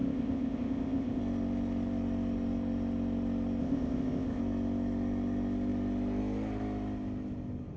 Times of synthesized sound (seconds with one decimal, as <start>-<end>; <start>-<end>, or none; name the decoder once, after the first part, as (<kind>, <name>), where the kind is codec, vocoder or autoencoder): 0.0-1.2 (codec, ZipCodec); 3.6-4.4